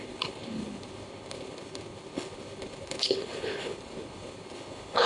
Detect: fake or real fake